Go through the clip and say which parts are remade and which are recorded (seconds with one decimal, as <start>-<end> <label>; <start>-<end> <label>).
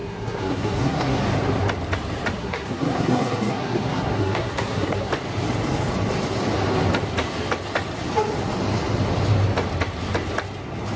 0.0-1.2 remade; 1.2-2.4 recorded; 2.4-5.1 remade; 5.1-11.0 recorded